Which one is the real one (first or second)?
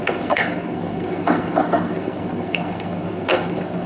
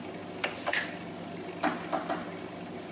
second